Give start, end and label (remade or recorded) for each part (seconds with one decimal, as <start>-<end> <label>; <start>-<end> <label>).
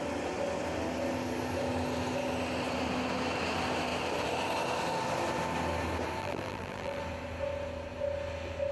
0.0-6.2 recorded; 6.2-7.0 remade; 7.0-8.7 recorded